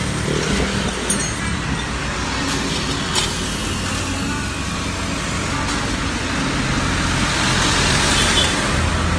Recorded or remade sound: recorded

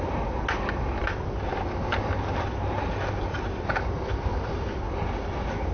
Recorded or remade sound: recorded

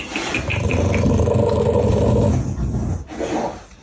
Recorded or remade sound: recorded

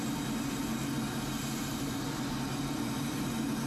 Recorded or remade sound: recorded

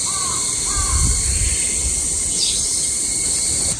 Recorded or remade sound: recorded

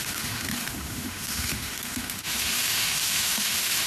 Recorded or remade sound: remade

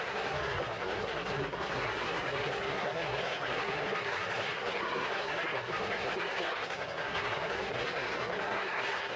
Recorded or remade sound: remade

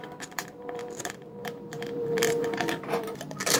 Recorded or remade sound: remade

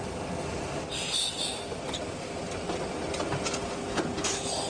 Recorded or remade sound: recorded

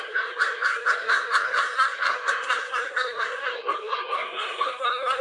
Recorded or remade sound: remade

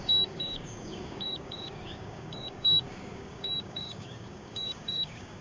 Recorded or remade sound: remade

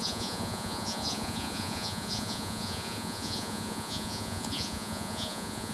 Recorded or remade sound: remade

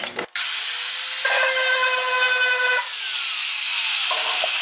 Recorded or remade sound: recorded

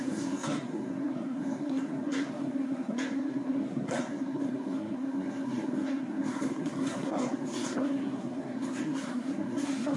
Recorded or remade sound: remade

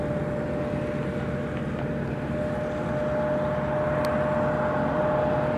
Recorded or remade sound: recorded